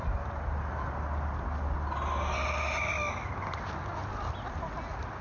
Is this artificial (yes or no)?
no